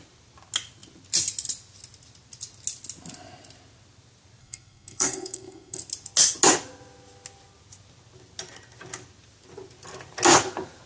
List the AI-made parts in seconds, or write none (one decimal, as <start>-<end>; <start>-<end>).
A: 4.4-5.8